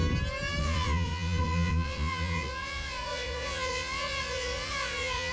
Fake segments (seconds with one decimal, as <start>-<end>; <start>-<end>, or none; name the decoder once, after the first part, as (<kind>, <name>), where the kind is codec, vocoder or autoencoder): 0.6-5.3 (vocoder, Vocos)